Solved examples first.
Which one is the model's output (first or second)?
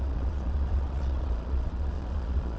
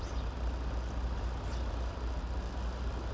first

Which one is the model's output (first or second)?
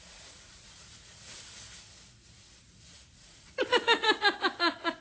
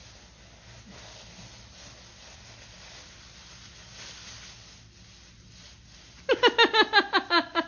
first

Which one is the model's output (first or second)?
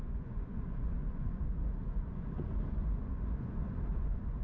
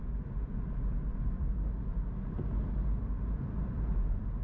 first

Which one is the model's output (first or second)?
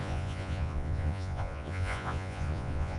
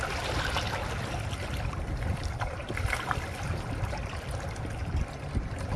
first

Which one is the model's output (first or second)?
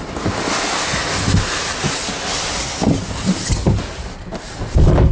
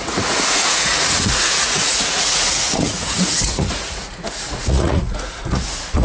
second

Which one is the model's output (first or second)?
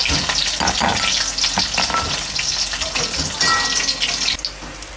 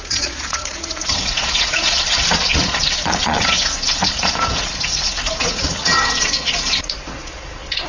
second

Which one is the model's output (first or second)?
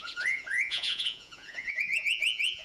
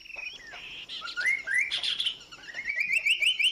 first